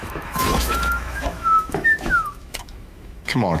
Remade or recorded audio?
remade